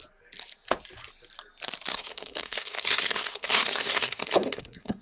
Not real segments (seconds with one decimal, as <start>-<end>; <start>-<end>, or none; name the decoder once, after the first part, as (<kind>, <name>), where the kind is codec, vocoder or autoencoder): 1.9-5.0 (codec, SNAC)